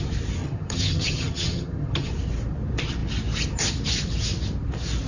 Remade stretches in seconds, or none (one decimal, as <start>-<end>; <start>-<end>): 0.4-2.1